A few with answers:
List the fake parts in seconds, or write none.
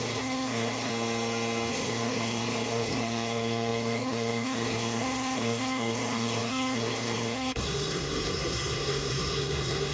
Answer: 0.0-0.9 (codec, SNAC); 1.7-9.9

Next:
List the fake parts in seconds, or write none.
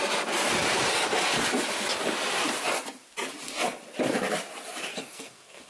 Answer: 4.9-5.7 (codec, SNAC)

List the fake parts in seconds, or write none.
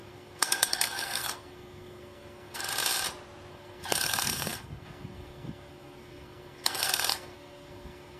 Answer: 0.0-2.6 (codec, SNAC); 3.5-8.2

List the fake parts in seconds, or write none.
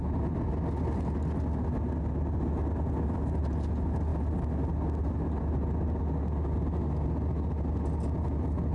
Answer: none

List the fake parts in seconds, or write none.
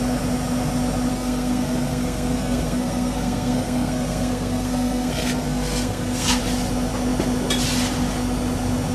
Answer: 1.1-6.4 (codec, SNAC)